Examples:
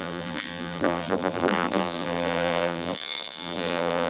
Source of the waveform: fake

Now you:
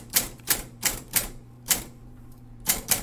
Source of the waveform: fake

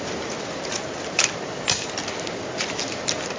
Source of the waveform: real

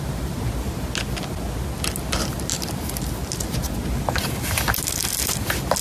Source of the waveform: real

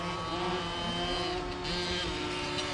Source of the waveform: real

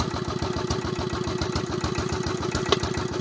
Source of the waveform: real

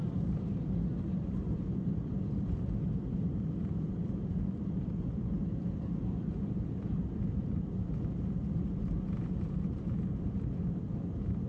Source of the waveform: fake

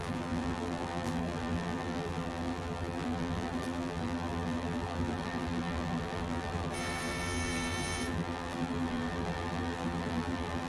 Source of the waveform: fake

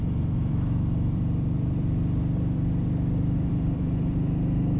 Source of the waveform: fake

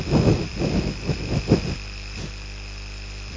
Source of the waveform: fake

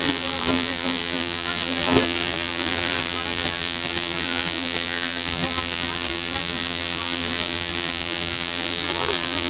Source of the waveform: fake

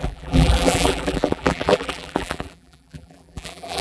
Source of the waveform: fake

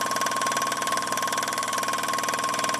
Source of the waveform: fake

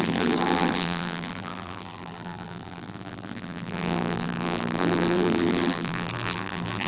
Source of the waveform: fake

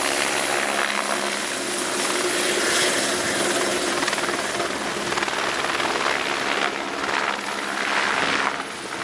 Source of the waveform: real